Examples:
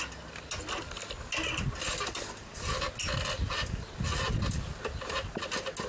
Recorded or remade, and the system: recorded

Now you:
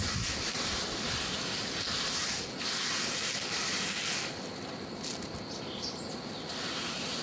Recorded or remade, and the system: recorded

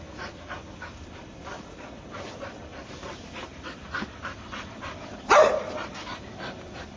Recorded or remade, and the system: remade, vocoder, BigVGAN v2